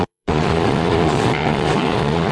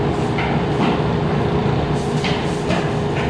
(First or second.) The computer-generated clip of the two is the first